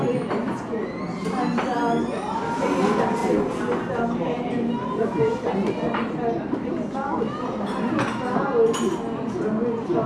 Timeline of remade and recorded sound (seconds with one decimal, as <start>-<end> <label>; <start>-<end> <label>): 0.0-10.1 recorded